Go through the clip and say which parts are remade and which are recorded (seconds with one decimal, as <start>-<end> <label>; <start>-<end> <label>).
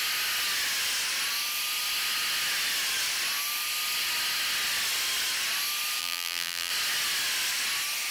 0.0-6.0 recorded; 6.0-6.7 remade; 6.7-8.1 recorded